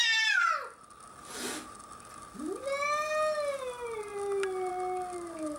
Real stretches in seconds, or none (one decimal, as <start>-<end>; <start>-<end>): 0.0-5.6